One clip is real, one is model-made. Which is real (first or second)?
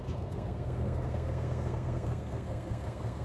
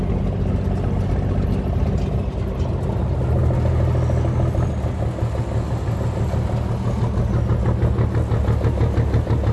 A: second